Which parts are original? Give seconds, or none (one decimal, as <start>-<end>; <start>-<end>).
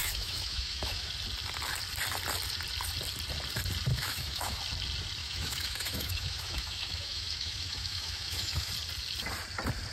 1.1-3.9; 4.6-5.2; 8.7-9.9